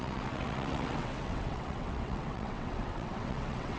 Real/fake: fake